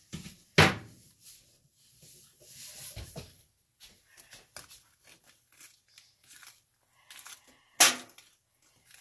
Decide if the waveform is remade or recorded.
recorded